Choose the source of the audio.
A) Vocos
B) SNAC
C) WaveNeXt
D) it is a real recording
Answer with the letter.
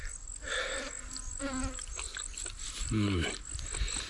D